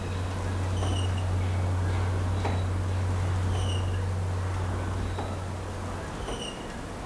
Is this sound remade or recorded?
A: recorded